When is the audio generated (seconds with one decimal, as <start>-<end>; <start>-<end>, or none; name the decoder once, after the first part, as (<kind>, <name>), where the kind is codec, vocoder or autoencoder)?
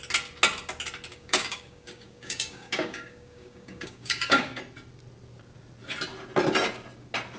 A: 1.1-4.6 (codec, DAC)